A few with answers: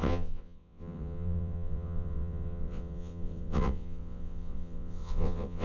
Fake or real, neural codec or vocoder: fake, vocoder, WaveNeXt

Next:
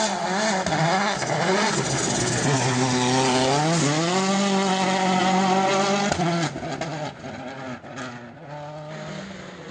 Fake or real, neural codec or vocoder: real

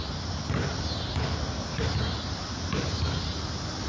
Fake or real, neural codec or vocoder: real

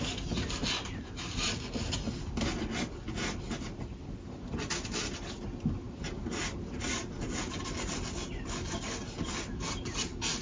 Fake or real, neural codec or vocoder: real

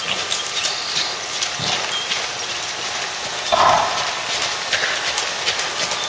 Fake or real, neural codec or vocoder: real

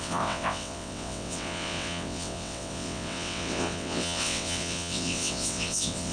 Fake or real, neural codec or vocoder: fake, vocoder, WaveNeXt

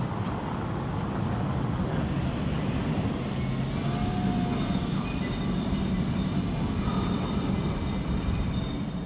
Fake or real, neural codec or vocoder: real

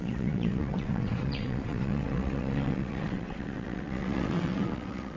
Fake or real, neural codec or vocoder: fake, vocoder, WaveNeXt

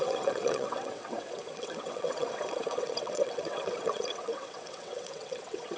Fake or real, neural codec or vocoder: fake, vocoder, WaveNeXt